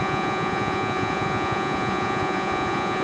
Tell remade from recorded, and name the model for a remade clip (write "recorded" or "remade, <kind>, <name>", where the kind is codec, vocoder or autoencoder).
remade, vocoder, Vocos